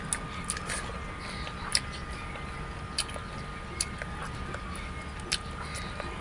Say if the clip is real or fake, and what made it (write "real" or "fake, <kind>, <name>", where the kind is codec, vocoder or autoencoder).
real